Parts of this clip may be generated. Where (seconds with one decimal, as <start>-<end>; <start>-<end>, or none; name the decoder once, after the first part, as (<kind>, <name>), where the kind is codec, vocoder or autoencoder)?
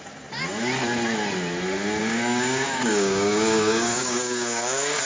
2.0-5.0 (codec, DAC)